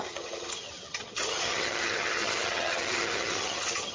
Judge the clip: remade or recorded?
remade